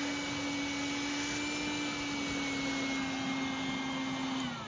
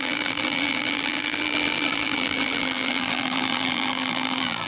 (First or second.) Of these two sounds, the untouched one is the first